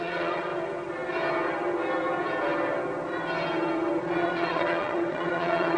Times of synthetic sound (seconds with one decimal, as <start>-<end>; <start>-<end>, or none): 0.0-0.5; 4.0-5.8